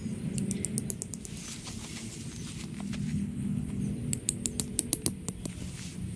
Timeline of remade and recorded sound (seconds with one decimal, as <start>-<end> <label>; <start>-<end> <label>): 0.0-3.1 recorded; 3.1-3.8 remade; 3.8-6.2 recorded